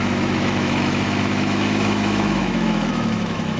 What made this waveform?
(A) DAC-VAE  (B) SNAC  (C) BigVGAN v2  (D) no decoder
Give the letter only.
A